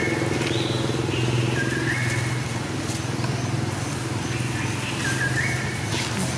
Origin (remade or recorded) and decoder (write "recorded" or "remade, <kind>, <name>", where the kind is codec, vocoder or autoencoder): recorded